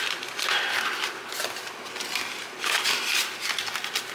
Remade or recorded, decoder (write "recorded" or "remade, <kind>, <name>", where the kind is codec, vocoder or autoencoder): recorded